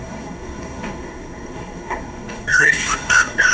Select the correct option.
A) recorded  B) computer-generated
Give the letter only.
B